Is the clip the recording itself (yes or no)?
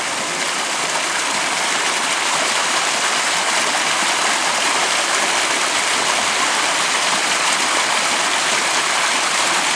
yes